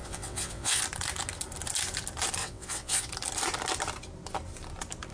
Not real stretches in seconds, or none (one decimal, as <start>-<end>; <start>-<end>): 0.0-0.8; 2.4-3.1